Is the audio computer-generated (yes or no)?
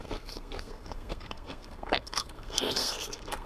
yes